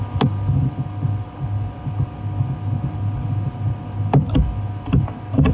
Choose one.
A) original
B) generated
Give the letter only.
A